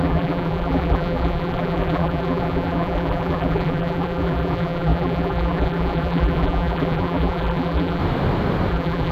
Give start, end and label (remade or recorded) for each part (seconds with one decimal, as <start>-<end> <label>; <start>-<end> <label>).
0.0-8.0 remade; 8.0-8.7 recorded; 8.7-9.1 remade